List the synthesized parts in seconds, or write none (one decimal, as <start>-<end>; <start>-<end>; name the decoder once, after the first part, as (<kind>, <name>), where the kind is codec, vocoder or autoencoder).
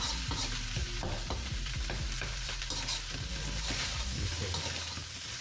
0.8-2.6 (vocoder, BigVGAN v2); 3.3-4.1